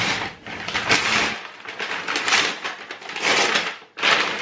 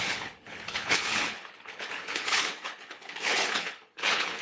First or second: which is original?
first